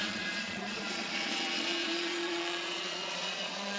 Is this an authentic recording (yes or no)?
no